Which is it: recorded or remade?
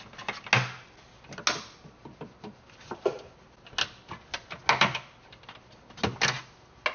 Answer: recorded